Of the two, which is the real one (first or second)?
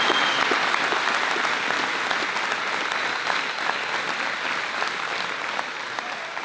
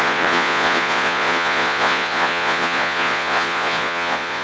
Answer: first